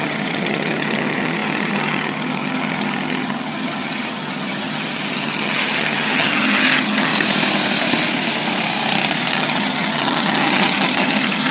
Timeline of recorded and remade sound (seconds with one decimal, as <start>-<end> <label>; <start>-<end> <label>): 0.0-7.1 remade; 7.1-9.3 recorded; 9.3-11.5 remade